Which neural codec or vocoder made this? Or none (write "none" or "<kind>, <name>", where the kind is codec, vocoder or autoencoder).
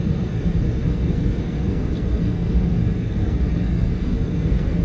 codec, SNAC